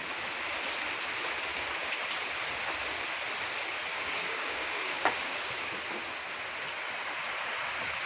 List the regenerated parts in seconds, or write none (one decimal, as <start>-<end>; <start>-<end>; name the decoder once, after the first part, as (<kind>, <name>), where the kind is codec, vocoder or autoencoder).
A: 3.9-5.7 (codec, DAC)